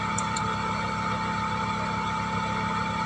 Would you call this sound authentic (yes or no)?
no